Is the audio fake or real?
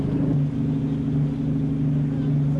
real